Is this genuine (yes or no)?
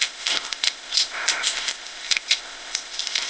no